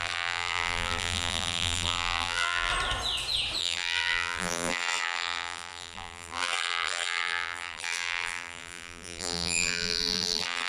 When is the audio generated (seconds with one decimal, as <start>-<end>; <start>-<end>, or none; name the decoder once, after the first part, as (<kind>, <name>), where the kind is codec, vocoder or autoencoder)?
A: 0.0-2.7 (vocoder, BigVGAN v2); 3.6-10.7